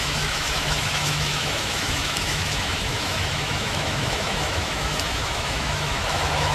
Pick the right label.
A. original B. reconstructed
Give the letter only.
B